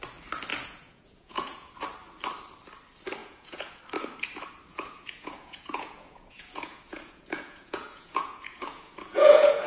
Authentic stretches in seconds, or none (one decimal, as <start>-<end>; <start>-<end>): 0.0-0.5; 1.7-3.2; 3.8-4.7